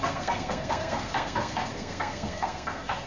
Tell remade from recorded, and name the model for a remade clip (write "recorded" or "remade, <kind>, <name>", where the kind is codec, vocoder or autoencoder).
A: remade, codec, SNAC